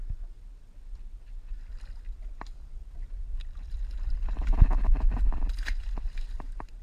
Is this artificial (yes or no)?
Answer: no